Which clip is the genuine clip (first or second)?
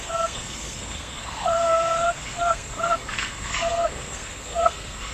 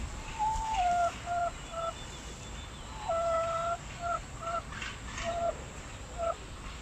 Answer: second